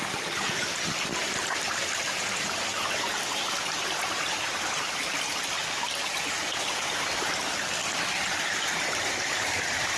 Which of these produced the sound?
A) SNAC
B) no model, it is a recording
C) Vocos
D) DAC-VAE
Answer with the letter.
B